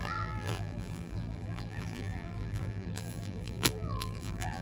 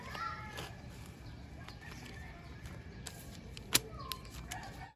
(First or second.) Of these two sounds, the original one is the second